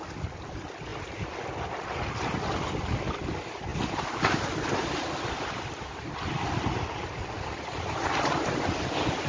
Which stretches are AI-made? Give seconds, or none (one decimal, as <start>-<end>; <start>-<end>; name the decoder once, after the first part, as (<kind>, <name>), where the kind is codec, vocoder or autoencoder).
none